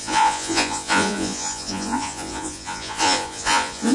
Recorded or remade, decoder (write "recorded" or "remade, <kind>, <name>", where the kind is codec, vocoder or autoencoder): remade, vocoder, Vocos